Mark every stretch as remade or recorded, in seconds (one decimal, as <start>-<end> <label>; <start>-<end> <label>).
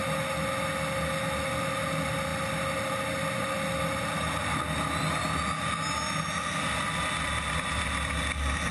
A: 0.0-8.7 recorded